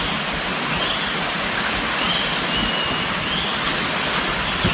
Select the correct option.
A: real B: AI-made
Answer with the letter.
A